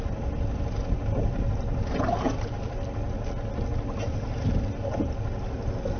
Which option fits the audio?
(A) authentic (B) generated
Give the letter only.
A